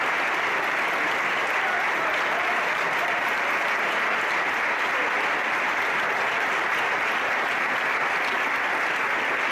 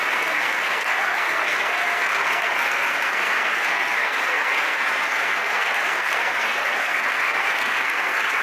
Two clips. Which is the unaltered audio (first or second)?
first